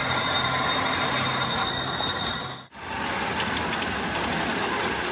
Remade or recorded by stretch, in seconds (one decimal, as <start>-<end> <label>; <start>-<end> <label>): 0.0-5.1 recorded